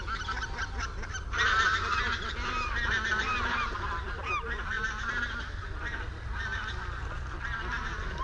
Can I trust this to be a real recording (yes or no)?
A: yes